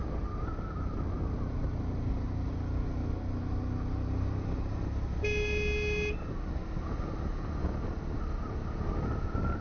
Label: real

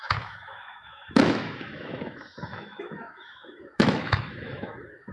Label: fake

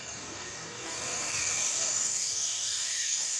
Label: fake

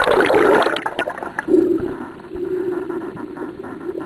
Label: real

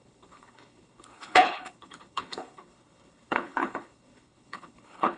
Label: fake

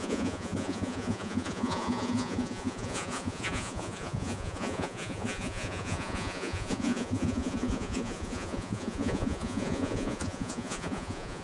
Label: fake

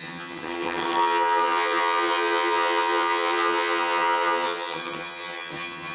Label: fake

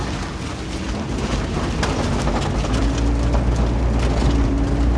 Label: real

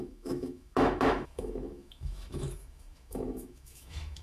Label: fake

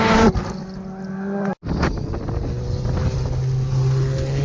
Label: real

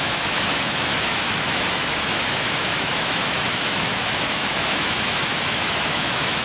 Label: fake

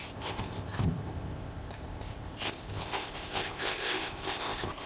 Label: fake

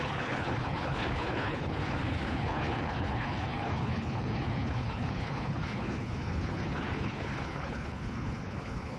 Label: fake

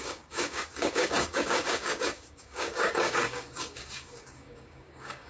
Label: fake